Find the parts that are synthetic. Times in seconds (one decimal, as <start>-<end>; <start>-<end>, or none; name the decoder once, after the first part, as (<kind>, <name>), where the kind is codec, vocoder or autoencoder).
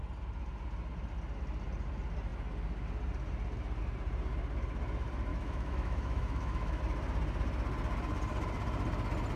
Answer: 5.3-6.8 (autoencoder, DAC-VAE)